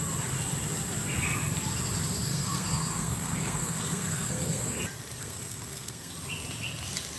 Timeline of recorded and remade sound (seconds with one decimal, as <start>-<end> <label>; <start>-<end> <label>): 0.0-2.3 recorded; 2.3-4.8 remade; 4.8-5.2 recorded; 5.2-6.1 remade; 6.1-7.2 recorded

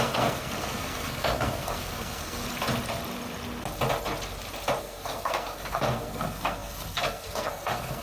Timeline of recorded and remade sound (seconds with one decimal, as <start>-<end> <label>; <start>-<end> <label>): 0.0-2.4 remade; 2.4-4.8 recorded; 4.8-8.0 remade

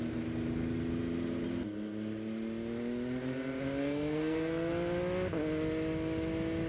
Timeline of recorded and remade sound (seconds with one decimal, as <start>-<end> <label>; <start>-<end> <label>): 0.0-3.8 recorded; 3.8-4.7 remade; 4.7-6.7 recorded

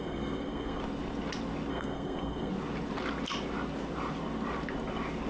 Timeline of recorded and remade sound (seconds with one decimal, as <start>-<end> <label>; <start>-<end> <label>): 0.0-0.8 remade; 0.8-1.7 recorded; 1.7-2.5 remade; 2.5-5.3 recorded

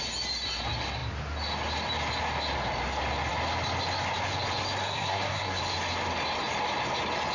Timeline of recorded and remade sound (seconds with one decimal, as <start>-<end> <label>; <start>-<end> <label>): 0.0-4.8 recorded; 4.8-5.6 remade; 5.6-7.3 recorded

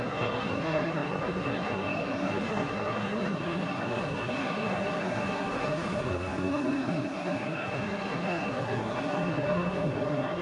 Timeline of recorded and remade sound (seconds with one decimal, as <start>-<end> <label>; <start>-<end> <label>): 0.0-10.4 remade